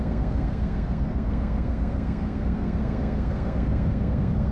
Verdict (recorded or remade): remade